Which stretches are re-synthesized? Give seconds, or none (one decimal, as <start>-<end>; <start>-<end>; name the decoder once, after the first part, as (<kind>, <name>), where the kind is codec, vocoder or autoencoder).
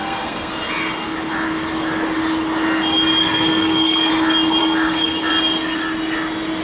0.0-0.5 (codec, SNAC); 3.2-4.1; 4.6-5.3